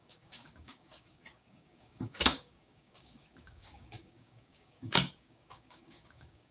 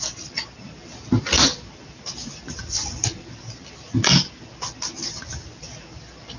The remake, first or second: first